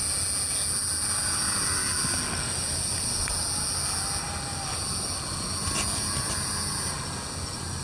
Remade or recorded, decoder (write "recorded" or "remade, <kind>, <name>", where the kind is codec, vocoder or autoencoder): recorded